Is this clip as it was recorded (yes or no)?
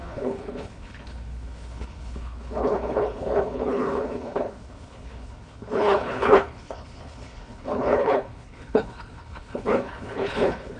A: no